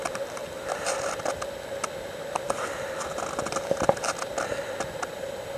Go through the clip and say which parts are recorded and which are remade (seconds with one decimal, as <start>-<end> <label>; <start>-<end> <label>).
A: 0.0-5.6 recorded